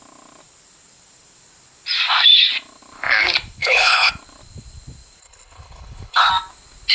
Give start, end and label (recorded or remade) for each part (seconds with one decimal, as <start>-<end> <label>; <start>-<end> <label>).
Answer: 0.0-3.6 recorded; 3.6-4.1 remade; 4.1-5.2 recorded; 5.2-6.3 remade; 6.3-6.9 recorded